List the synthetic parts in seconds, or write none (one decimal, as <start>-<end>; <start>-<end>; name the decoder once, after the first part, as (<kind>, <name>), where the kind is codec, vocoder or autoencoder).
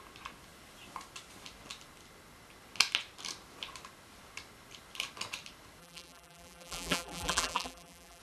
5.8-8.2 (vocoder, BigVGAN v2)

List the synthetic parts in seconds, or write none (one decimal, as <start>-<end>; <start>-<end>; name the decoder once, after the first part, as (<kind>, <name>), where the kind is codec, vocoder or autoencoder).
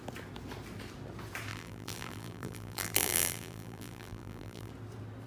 1.5-4.7 (vocoder, BigVGAN v2)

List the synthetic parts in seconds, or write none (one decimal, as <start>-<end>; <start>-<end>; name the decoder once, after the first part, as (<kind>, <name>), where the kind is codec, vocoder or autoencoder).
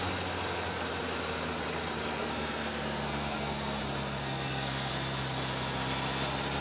2.2-3.8 (codec, SNAC); 4.2-4.9